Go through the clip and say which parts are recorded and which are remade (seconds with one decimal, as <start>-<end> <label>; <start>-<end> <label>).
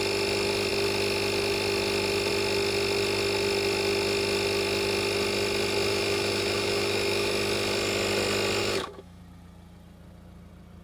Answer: 0.0-5.9 recorded; 5.9-7.3 remade; 7.3-8.6 recorded; 8.6-9.2 remade; 9.2-10.8 recorded